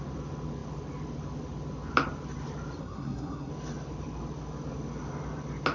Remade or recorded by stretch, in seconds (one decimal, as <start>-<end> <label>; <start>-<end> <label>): 0.0-2.8 recorded; 2.8-3.5 remade; 3.5-5.7 recorded